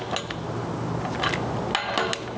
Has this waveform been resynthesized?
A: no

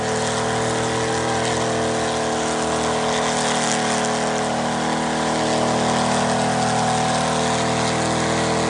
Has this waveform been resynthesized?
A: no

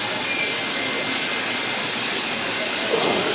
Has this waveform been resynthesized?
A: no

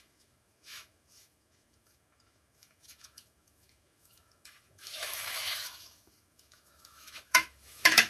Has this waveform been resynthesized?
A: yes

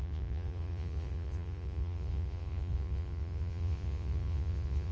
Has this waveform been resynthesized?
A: yes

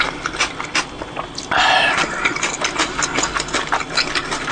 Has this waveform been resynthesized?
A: no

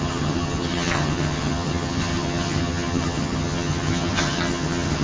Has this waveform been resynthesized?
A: yes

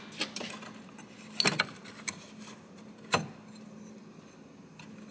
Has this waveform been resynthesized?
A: no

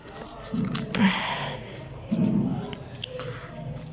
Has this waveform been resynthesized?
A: no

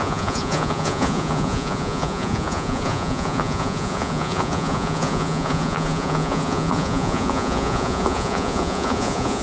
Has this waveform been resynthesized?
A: yes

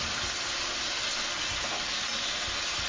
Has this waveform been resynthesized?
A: no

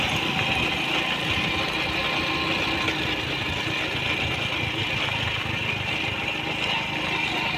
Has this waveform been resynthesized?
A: no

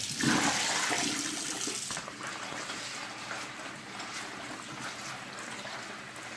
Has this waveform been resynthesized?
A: no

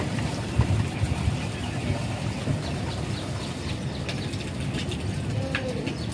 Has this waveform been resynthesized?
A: no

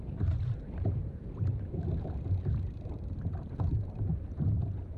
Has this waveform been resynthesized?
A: yes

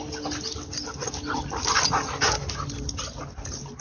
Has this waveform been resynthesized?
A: no